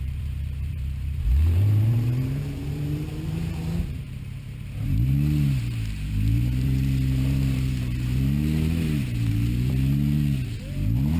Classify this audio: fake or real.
fake